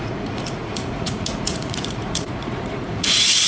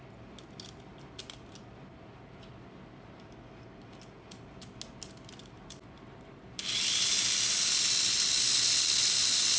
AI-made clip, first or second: first